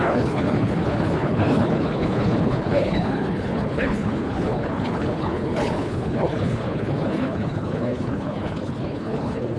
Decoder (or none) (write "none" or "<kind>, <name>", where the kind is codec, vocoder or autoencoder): codec, HILCodec